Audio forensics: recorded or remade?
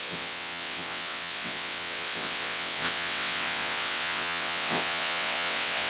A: remade